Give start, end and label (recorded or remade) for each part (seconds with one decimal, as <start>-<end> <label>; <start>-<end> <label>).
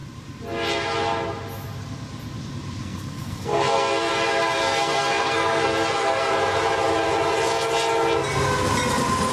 0.0-2.8 recorded; 2.8-4.1 remade; 4.1-4.6 recorded; 4.6-6.3 remade; 6.3-9.3 recorded